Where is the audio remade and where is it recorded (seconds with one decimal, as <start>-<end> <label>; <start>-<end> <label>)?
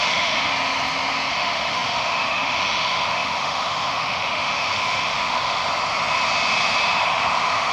0.0-0.5 remade; 0.5-1.3 recorded; 1.3-5.6 remade; 5.6-7.1 recorded; 7.1-7.7 remade